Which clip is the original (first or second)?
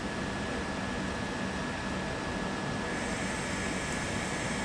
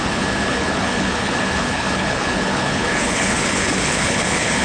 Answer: first